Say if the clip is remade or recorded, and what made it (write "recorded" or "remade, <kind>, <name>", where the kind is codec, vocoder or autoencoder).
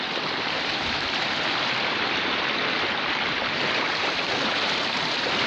remade, vocoder, BigVGAN v2